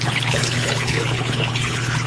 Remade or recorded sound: remade